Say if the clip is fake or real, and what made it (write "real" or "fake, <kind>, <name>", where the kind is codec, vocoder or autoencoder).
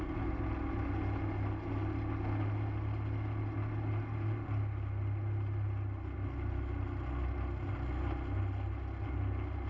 real